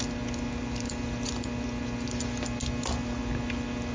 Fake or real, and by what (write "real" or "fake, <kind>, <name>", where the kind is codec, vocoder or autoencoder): real